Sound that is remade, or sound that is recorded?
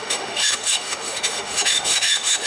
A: remade